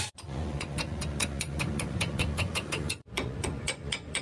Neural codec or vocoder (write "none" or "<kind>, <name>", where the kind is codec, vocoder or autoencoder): vocoder, Vocos